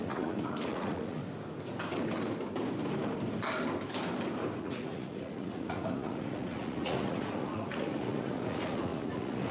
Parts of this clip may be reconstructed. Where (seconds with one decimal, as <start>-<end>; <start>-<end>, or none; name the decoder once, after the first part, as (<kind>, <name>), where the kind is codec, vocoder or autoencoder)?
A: 0.0-1.2 (vocoder, Vocos); 4.6-9.5